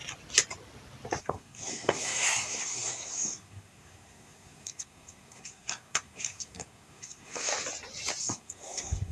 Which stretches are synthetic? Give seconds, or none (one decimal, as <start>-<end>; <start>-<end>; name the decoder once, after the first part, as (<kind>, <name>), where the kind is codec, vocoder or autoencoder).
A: 1.2-7.5 (codec, SNAC); 8.2-9.1